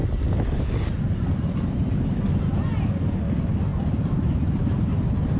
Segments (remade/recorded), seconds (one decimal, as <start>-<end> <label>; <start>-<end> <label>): 0.0-5.4 recorded